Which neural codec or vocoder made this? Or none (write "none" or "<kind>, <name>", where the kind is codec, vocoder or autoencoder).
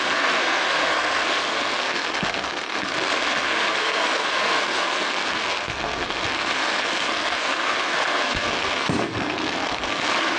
codec, SNAC